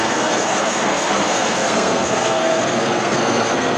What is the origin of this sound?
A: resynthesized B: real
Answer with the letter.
A